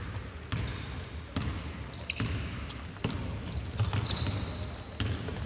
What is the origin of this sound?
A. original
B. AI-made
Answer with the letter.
A